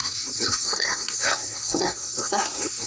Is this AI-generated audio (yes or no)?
yes